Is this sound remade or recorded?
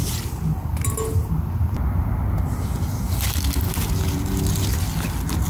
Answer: recorded